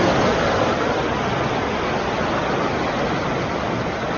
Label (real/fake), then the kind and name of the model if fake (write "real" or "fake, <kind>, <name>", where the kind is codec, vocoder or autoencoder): real